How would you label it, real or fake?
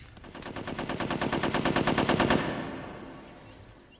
real